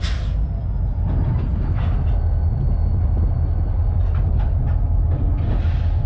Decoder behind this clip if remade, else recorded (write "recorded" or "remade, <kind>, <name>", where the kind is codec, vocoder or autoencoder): recorded